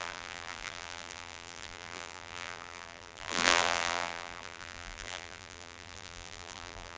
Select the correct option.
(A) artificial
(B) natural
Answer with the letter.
A